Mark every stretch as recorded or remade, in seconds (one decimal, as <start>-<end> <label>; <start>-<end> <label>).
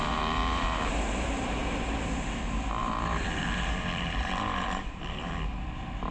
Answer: 0.0-0.9 remade; 0.9-2.8 recorded; 2.8-5.3 remade; 5.3-6.1 recorded